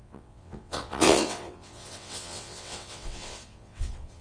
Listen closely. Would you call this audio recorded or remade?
remade